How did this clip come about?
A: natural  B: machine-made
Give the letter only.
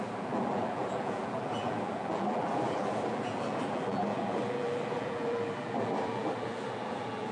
B